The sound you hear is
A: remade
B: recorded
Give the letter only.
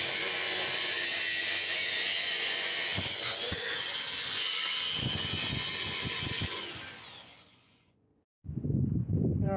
A